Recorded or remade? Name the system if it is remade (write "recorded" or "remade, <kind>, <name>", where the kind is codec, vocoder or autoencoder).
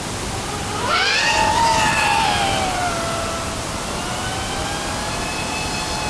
recorded